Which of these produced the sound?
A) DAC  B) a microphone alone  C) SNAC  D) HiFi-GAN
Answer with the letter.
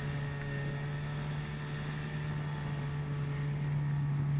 B